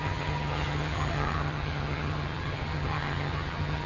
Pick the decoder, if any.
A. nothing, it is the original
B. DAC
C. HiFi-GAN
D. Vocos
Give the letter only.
C